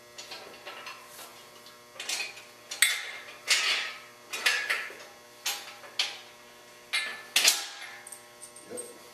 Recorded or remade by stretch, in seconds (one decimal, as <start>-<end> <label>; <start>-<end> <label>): 0.0-9.1 recorded